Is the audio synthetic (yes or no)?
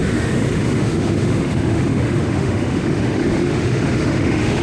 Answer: yes